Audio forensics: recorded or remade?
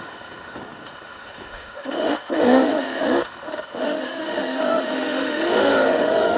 remade